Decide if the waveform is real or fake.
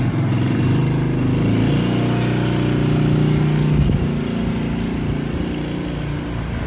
real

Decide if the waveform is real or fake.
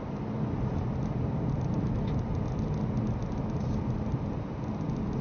real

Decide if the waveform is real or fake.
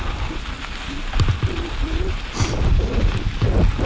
real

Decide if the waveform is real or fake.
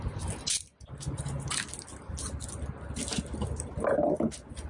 real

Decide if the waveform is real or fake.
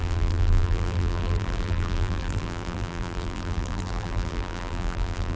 fake